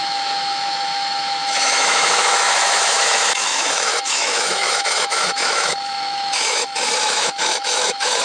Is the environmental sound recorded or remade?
remade